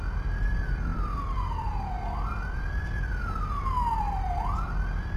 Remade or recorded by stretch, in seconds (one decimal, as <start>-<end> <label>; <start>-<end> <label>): 0.0-5.2 recorded